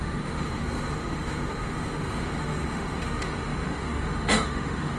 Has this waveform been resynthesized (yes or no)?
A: yes